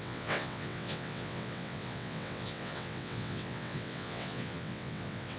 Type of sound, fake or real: fake